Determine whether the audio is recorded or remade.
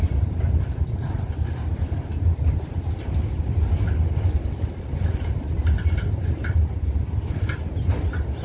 recorded